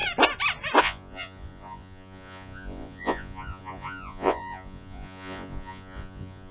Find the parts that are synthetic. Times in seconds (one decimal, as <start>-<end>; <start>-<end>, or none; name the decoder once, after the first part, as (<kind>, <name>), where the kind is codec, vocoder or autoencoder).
0.8-6.5 (vocoder, Vocos)